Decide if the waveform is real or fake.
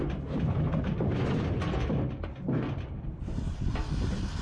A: real